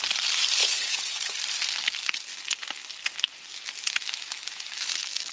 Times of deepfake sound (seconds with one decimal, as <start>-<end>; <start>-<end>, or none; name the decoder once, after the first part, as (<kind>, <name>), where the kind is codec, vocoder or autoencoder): 0.6-1.4 (codec, HILCodec)